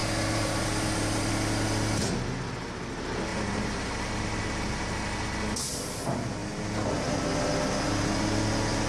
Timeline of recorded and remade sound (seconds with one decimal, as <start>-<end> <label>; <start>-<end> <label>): 0.0-1.3 remade; 1.3-3.3 recorded; 3.3-5.2 remade; 5.2-8.9 recorded